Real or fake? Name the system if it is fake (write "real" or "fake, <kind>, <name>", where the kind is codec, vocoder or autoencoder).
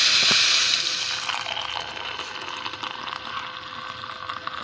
real